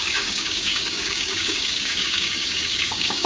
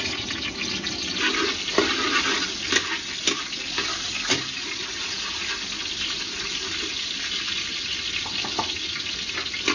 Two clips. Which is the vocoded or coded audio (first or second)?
first